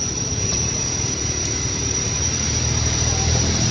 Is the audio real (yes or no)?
no